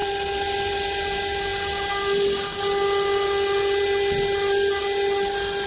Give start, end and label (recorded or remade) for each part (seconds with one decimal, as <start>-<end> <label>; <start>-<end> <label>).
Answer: 0.0-5.7 recorded